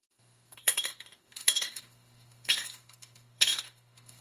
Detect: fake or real fake